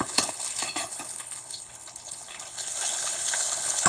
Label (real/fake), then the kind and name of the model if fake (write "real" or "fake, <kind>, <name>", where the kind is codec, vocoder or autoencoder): fake, codec, HILCodec